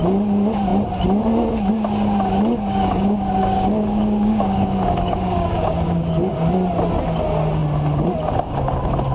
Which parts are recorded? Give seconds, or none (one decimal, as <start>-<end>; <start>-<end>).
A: 0.0-2.5; 6.4-9.1